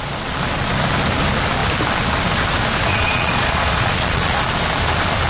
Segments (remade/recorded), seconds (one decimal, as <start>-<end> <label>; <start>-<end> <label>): 0.0-2.9 recorded; 2.9-4.4 remade; 4.4-5.3 recorded